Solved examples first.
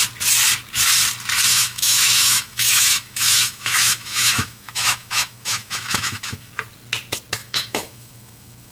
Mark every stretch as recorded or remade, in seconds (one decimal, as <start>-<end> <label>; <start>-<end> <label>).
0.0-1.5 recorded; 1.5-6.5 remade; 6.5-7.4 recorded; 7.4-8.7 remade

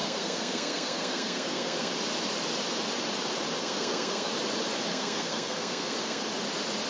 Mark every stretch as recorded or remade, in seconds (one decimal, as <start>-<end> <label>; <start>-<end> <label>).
0.0-1.9 remade; 1.9-3.6 recorded; 3.6-4.3 remade; 4.3-4.9 recorded; 4.9-6.2 remade; 6.2-6.9 recorded

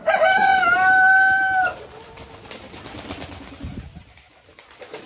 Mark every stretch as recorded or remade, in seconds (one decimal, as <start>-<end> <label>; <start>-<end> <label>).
0.0-5.1 recorded